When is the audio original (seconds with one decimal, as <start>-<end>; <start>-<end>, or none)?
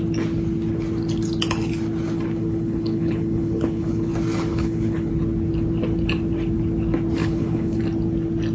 0.0-2.5; 4.1-4.5; 5.1-7.2; 7.8-8.5